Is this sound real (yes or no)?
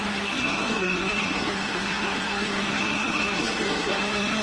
no